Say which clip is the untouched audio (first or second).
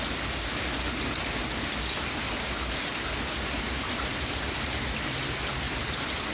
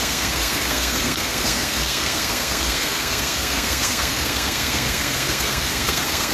first